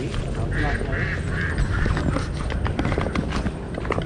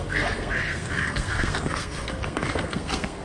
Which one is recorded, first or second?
first